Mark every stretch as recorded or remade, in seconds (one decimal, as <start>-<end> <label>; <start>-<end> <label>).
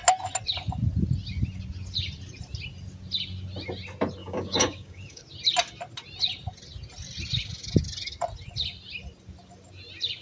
0.0-4.2 recorded; 4.2-5.2 remade; 5.2-10.2 recorded